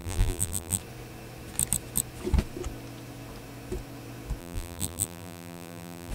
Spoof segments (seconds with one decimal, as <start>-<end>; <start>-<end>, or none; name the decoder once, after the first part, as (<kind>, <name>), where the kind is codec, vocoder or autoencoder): 0.0-0.8 (vocoder, BigVGAN v2); 4.4-6.1